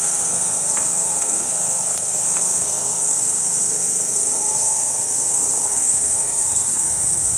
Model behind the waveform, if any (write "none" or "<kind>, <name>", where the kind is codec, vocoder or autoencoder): codec, SNAC